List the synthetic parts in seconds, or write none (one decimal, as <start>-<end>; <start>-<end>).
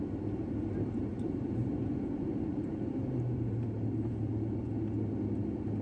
1.1-1.9; 2.5-4.7